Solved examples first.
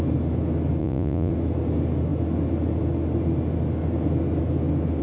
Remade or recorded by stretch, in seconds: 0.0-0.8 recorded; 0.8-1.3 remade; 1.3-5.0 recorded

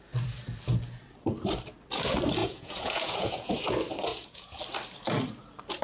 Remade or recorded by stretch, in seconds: 0.0-2.4 recorded; 2.4-3.5 remade; 3.5-4.1 recorded; 4.1-4.6 remade; 4.6-5.8 recorded